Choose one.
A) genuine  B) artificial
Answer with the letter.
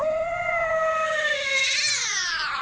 A